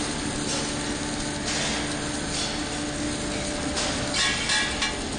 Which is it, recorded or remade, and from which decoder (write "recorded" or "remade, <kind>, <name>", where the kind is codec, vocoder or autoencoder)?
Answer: recorded